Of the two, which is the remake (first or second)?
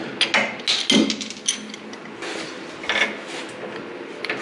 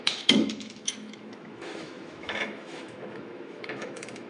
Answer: second